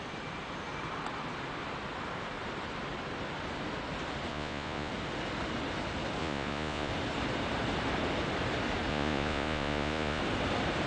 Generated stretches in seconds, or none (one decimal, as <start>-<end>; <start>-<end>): 4.3-4.9; 6.2-6.9; 8.9-10.2